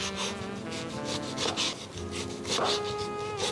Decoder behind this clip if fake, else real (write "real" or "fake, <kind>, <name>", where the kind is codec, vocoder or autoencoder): real